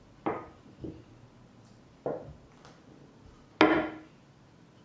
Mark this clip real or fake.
real